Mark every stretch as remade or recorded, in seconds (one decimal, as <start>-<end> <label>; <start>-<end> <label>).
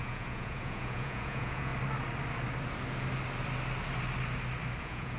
0.0-1.7 remade; 1.7-4.8 recorded; 4.8-5.2 remade